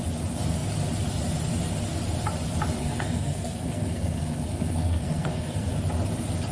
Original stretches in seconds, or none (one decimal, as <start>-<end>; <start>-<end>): 0.0-2.8; 5.7-6.5

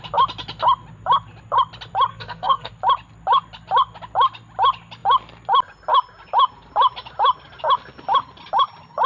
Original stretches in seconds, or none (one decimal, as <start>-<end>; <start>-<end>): 0.0-2.1; 2.7-9.1

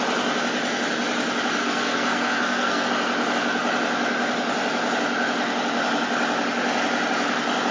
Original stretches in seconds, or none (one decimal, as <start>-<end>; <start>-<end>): 0.0-1.6; 2.9-7.7